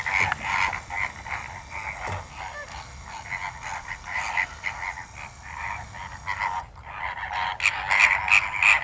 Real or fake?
real